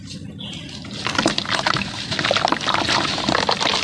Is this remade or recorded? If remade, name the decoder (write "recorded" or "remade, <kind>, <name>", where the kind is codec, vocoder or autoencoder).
recorded